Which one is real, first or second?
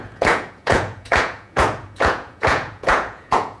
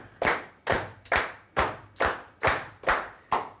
second